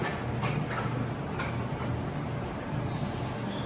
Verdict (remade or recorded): recorded